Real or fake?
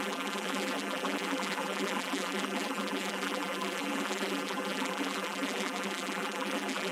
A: fake